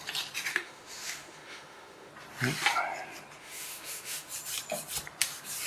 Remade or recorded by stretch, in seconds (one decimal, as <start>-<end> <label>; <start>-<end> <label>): 0.0-0.5 recorded; 0.5-2.1 remade; 2.1-3.4 recorded; 3.4-4.3 remade; 4.3-5.7 recorded